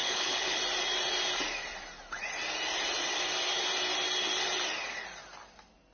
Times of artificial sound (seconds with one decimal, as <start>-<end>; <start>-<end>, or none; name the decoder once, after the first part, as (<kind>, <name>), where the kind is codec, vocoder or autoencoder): 0.0-0.6 (codec, HILCodec)